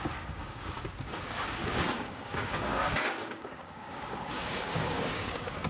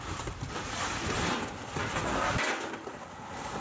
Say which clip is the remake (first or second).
first